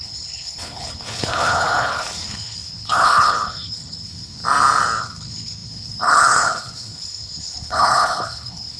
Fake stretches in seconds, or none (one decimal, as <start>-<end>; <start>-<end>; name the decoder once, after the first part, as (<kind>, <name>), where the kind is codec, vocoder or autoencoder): 0.0-4.4 (codec, HILCodec); 5.0-8.8